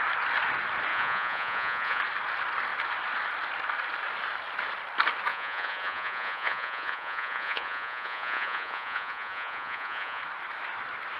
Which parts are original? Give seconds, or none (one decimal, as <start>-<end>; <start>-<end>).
0.0-0.9; 2.0-5.3; 10.2-11.2